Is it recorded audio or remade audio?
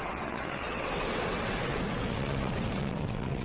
remade